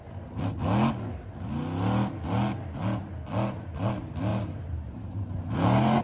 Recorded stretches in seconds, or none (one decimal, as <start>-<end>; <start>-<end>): 0.0-4.3